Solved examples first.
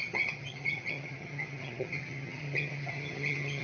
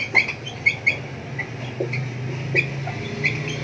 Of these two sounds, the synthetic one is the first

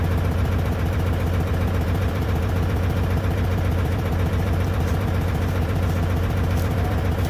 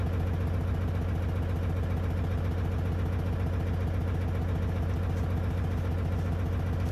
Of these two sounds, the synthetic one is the first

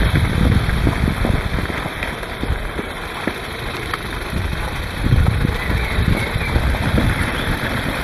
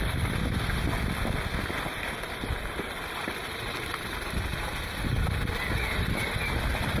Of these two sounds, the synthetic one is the first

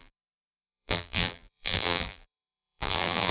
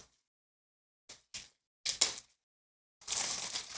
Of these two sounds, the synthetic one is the first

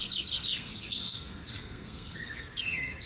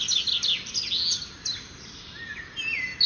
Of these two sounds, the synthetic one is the first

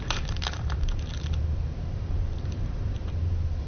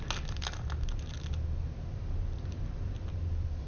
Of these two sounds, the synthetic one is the first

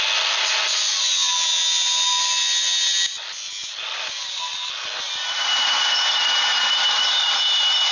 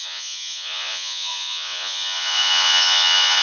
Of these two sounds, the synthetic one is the second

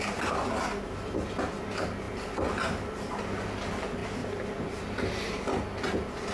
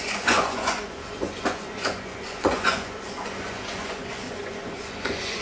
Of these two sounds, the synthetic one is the second